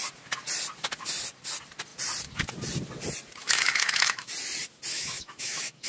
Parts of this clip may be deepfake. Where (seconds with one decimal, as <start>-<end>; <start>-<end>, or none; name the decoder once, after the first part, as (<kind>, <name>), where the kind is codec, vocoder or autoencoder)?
3.4-4.3 (autoencoder, DAC-VAE); 4.9-5.9